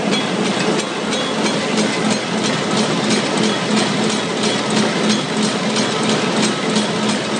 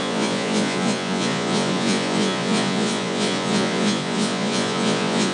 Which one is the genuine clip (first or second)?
first